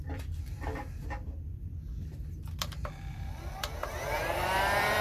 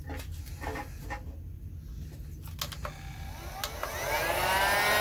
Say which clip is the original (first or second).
second